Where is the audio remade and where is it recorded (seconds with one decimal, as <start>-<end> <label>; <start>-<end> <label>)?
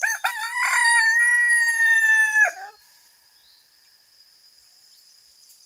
0.0-5.7 remade